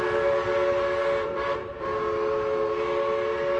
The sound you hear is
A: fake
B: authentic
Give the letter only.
B